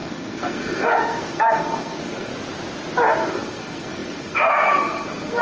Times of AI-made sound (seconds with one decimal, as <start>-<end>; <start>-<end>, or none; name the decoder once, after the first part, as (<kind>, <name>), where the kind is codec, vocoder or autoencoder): 0.0-2.3 (codec, SNAC); 3.3-5.4